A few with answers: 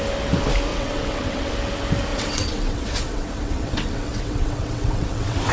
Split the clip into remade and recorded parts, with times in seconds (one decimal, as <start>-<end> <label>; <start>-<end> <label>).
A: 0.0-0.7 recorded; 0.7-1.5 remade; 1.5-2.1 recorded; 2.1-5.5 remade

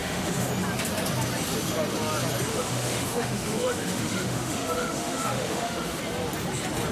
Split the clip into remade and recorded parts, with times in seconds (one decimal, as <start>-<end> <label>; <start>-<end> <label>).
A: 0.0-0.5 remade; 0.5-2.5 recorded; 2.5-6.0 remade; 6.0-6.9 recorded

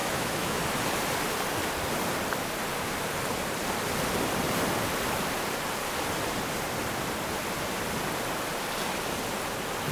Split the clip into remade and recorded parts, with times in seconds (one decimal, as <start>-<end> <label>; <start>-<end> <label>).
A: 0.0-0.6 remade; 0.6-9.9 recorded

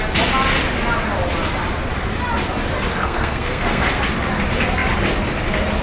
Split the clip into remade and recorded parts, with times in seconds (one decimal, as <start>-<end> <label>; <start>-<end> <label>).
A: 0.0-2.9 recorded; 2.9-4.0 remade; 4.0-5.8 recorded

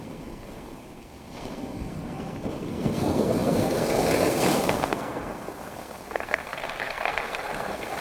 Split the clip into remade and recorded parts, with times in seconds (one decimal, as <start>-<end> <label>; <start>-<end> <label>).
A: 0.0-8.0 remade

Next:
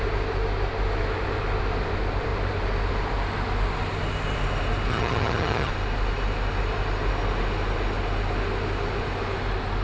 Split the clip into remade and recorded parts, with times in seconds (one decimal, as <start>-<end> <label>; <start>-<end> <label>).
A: 0.0-4.9 recorded; 4.9-5.7 remade; 5.7-9.8 recorded

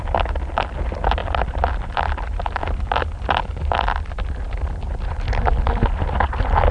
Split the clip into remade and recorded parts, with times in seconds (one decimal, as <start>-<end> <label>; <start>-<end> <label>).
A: 0.0-6.7 recorded

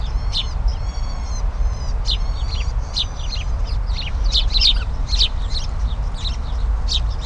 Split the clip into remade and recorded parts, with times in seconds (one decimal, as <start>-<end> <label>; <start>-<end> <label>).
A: 0.0-7.3 recorded